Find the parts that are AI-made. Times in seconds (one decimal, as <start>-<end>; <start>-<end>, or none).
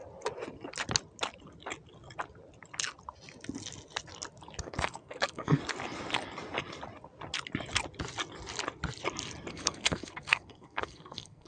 4.6-5.6; 9.5-11.5